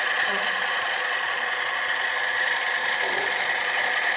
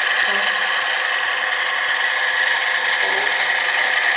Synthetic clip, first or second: first